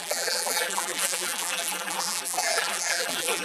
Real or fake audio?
fake